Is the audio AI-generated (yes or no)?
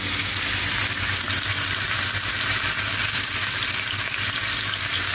no